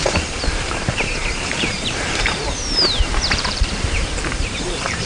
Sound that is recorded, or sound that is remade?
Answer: remade